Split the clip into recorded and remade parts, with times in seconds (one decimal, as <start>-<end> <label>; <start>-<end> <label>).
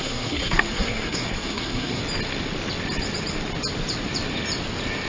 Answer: 0.0-2.0 remade; 2.0-5.1 recorded